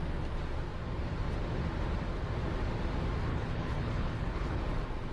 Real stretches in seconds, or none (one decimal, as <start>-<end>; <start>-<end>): 0.0-3.3; 4.6-5.1